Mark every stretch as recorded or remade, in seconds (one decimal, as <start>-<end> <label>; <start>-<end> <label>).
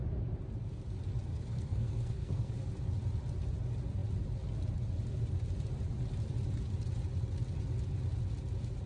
0.0-1.3 recorded; 1.3-2.5 remade; 2.5-8.9 recorded